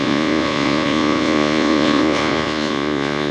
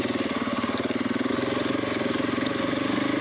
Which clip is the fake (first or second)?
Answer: first